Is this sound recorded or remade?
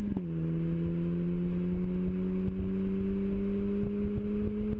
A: recorded